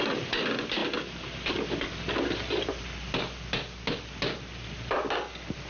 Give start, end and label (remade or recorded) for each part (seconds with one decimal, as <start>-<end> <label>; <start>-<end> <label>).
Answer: 0.0-5.7 recorded